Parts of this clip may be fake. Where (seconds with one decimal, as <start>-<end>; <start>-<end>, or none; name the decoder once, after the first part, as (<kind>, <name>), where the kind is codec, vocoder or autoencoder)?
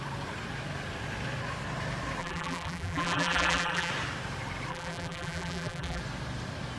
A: 2.2-3.9 (vocoder, BigVGAN v2); 4.7-6.0